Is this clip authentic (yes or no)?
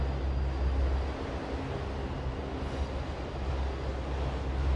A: yes